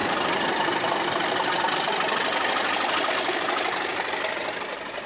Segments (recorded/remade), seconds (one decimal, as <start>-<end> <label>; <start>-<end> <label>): 0.0-5.1 recorded